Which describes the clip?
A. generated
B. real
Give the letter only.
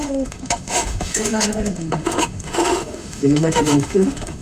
A